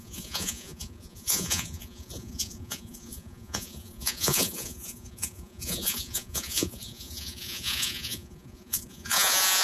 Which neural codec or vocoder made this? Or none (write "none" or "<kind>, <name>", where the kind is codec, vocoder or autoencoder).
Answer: vocoder, Vocos